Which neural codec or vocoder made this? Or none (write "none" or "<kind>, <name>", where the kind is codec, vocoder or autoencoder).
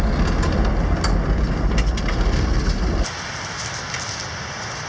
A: none